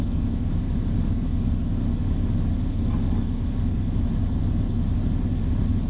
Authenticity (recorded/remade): recorded